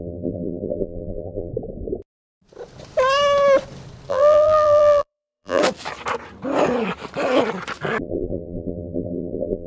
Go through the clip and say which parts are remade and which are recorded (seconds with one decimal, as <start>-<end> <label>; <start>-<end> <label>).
0.0-1.5 remade; 1.5-4.1 recorded; 4.1-5.6 remade; 5.6-8.0 recorded; 8.0-9.7 remade